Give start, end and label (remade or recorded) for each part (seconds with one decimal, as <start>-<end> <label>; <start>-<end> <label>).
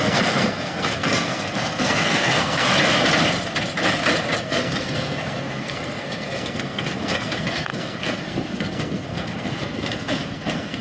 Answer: 0.0-2.7 remade; 2.7-4.4 recorded; 4.4-10.8 remade